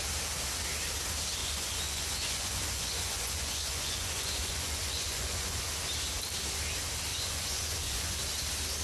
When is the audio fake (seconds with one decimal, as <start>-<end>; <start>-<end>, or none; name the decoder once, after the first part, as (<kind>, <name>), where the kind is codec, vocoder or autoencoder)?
1.4-5.7 (vocoder, Vocos); 7.1-8.2